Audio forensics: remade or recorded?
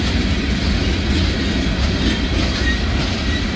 recorded